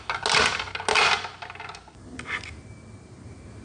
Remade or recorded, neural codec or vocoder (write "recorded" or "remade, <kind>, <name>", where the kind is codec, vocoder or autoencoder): recorded